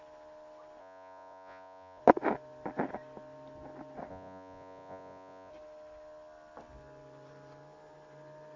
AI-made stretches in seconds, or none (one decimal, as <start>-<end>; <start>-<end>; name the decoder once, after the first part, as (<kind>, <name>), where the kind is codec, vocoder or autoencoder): 0.8-2.0 (vocoder, Vocos); 4.1-5.5